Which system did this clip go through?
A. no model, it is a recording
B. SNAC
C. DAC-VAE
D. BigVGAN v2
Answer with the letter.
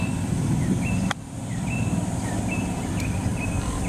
D